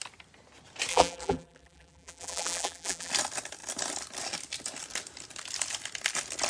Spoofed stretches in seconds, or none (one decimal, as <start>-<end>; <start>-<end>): 0.9-3.1